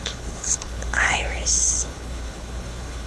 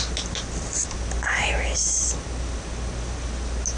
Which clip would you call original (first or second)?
second